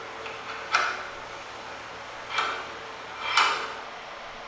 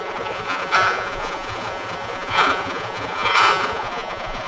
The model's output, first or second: second